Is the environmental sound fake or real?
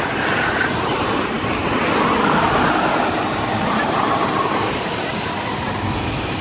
real